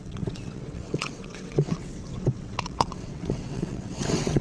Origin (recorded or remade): remade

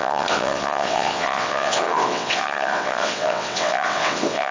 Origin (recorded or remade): remade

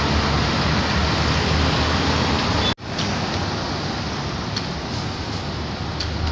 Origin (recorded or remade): recorded